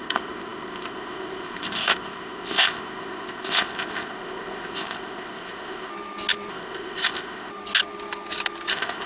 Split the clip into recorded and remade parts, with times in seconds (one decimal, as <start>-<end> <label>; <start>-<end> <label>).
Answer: 0.0-5.9 remade; 5.9-6.5 recorded; 6.5-7.5 remade; 7.5-8.7 recorded; 8.7-9.1 remade